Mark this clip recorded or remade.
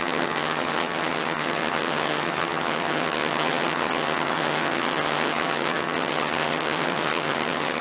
remade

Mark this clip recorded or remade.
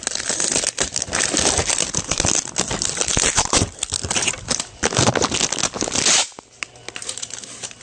recorded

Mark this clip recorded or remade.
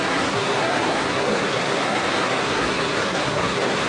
remade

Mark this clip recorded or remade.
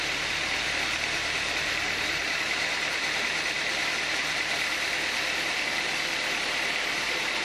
remade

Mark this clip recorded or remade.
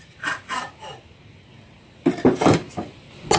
recorded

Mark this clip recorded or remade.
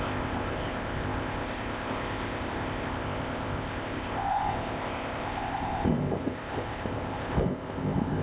remade